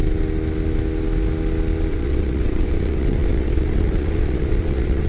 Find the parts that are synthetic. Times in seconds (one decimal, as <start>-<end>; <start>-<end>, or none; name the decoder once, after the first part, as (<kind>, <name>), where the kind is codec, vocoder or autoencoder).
1.9-5.1 (vocoder, WaveNeXt)